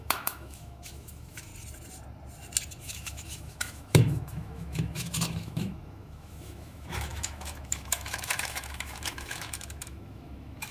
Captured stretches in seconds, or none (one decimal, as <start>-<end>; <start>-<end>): 1.5-2.8